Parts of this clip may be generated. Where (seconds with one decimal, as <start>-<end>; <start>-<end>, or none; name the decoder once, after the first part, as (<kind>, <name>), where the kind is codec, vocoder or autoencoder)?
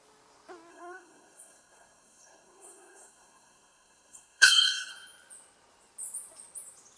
0.7-4.9 (codec, SNAC)